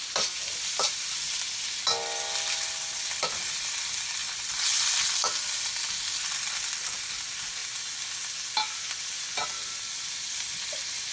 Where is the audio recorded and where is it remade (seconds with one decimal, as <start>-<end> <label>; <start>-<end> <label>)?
0.0-11.1 recorded

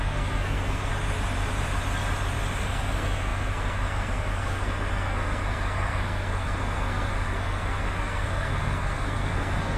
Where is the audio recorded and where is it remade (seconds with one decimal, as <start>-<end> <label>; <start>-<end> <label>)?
0.0-0.9 remade; 0.9-2.6 recorded; 2.6-9.8 remade